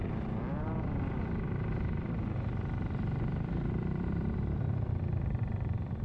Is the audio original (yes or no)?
no